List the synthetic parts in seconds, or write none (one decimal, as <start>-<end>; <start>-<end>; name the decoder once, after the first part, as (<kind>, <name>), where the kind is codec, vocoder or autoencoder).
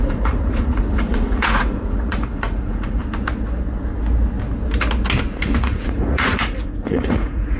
0.0-3.0 (vocoder, Vocos); 5.6-7.6